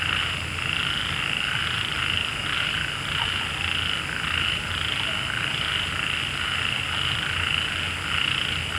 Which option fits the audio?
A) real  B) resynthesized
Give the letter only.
A